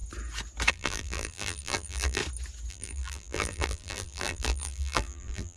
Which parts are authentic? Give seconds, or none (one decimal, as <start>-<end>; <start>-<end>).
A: 0.0-0.7; 2.2-2.7